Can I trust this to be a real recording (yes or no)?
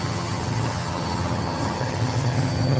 no